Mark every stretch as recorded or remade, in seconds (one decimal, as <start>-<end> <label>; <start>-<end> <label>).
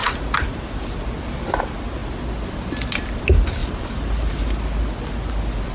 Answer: 0.0-3.6 recorded; 3.6-4.3 remade; 4.3-5.7 recorded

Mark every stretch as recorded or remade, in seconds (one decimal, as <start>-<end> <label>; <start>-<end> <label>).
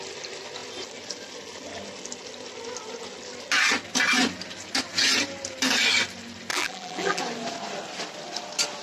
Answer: 0.0-6.5 recorded; 6.5-7.2 remade; 7.2-8.8 recorded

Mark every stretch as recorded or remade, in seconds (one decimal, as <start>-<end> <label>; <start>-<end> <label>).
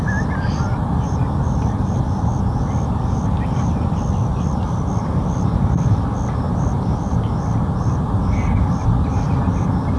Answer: 0.0-1.2 recorded; 1.2-3.2 remade; 3.2-10.0 recorded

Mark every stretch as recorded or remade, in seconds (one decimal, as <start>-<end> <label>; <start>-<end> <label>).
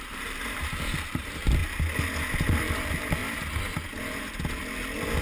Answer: 0.0-1.6 remade; 1.6-2.3 recorded; 2.3-3.2 remade; 3.2-5.2 recorded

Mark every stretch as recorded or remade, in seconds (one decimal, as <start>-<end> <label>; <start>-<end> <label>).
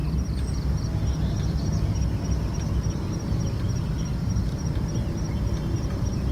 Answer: 0.0-4.1 recorded; 4.1-6.3 remade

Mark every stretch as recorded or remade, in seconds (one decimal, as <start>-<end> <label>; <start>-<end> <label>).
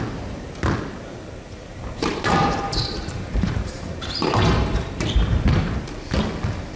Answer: 0.0-1.7 recorded; 1.7-5.8 remade; 5.8-6.8 recorded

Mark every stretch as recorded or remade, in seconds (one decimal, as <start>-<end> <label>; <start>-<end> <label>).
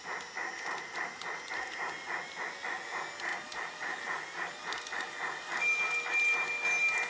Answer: 0.0-0.7 recorded; 0.7-1.9 remade; 1.9-3.3 recorded; 3.3-4.0 remade; 4.0-7.1 recorded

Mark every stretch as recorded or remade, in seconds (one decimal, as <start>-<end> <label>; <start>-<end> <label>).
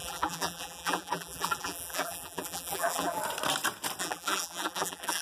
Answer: 0.0-3.2 remade; 3.2-4.0 recorded; 4.0-5.2 remade